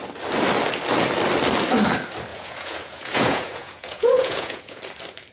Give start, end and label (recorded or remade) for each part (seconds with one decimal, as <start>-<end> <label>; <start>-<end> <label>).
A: 0.0-2.3 recorded; 2.3-4.8 remade; 4.8-5.3 recorded